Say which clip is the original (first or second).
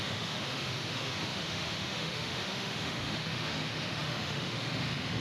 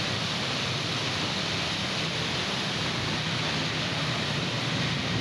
second